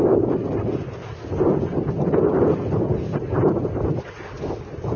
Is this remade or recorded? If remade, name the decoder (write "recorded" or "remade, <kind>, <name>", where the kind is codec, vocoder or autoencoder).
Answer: recorded